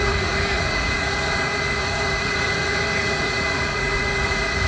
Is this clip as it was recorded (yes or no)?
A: no